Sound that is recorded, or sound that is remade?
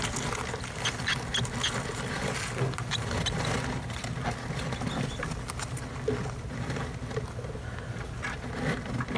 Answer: recorded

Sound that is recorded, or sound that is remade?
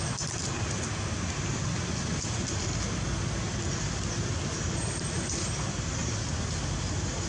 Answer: recorded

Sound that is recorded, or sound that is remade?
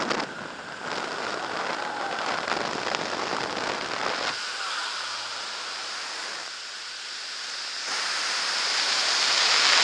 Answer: recorded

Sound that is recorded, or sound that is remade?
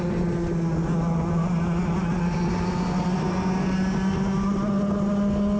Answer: recorded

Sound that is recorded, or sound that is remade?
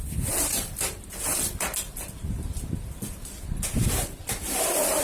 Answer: recorded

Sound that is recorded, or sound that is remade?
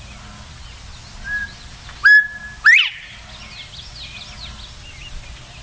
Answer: recorded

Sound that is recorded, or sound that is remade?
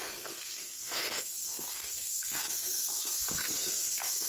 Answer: remade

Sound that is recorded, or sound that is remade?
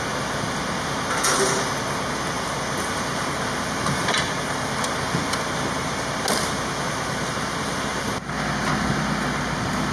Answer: recorded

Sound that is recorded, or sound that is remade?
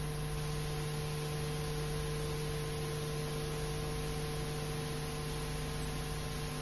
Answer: recorded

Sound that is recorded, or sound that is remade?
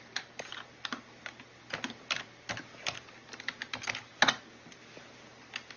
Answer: recorded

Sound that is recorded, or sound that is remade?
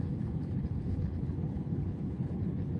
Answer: remade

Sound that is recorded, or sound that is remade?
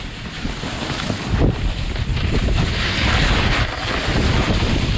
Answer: recorded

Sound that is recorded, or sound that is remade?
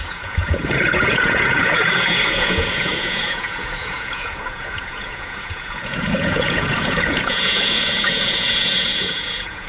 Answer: remade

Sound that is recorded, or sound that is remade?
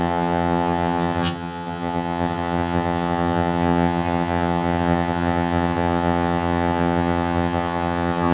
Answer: remade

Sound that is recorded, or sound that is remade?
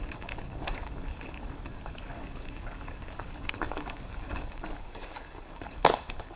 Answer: remade